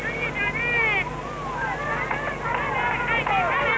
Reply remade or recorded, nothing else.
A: recorded